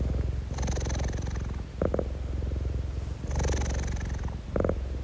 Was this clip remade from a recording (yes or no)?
no